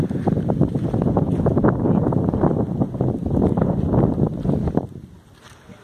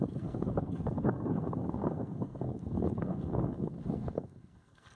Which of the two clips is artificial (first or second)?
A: second